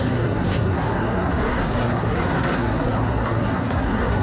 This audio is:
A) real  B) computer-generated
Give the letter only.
B